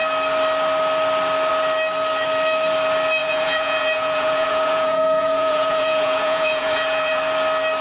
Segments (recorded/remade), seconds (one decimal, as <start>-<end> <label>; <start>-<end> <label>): 0.0-3.2 recorded; 3.2-7.2 remade; 7.2-7.8 recorded